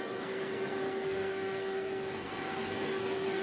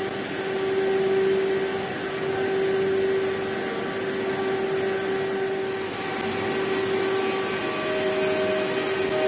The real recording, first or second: second